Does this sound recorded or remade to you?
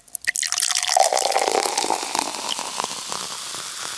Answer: recorded